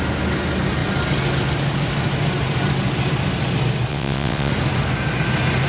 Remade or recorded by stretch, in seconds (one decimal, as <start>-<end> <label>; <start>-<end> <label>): 0.0-3.9 recorded; 3.9-4.5 remade; 4.5-5.7 recorded